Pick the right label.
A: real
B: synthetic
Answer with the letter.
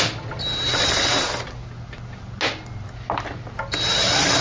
A